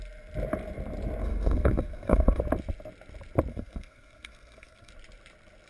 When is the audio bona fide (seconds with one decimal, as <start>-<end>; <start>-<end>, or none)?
0.0-1.2; 2.4-3.5; 4.9-5.7

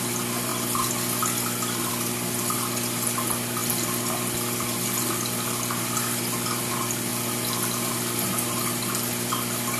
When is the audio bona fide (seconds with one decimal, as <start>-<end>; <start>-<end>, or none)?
0.0-3.6; 6.6-7.1; 7.9-9.8

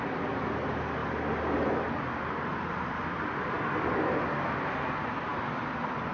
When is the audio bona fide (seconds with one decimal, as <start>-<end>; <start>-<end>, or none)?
0.0-6.1

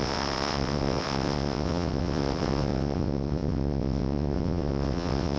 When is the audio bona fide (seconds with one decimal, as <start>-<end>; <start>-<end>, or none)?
none

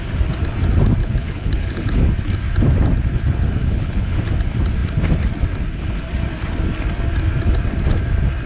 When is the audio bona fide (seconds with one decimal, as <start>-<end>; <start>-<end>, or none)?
0.0-1.0; 2.0-3.6; 4.2-8.5

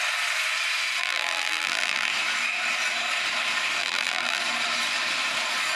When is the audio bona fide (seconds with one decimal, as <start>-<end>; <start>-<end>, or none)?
0.0-1.0; 2.1-3.8; 4.4-5.8

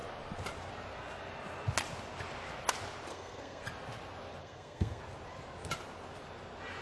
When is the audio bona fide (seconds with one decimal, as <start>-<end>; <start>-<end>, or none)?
0.0-3.1; 3.6-4.4; 5.0-6.8